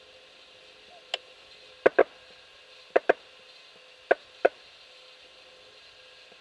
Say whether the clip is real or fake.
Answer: real